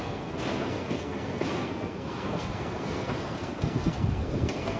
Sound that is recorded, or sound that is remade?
remade